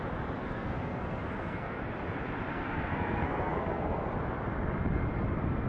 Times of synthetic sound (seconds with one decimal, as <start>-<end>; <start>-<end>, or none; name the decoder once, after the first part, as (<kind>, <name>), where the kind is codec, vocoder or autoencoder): 0.4-1.8 (codec, SNAC); 2.5-4.0